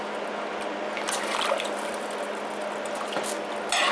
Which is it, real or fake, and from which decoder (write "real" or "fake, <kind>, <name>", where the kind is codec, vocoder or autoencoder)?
real